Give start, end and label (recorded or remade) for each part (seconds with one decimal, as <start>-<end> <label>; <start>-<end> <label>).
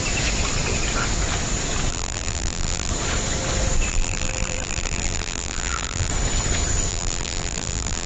0.0-1.9 recorded; 1.9-2.9 remade; 2.9-3.9 recorded; 3.9-6.1 remade; 6.1-6.9 recorded; 6.9-8.1 remade